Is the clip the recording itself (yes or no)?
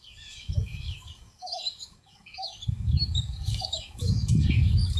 no